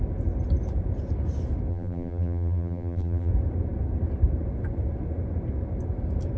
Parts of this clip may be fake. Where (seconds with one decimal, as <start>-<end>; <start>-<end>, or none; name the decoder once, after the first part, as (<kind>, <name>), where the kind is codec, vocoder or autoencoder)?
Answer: 1.7-3.3 (vocoder, BigVGAN v2)